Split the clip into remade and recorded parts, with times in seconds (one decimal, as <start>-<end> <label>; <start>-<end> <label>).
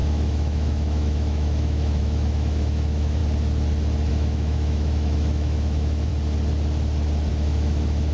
0.0-3.2 remade; 3.2-4.1 recorded; 4.1-6.1 remade; 6.1-7.3 recorded; 7.3-8.1 remade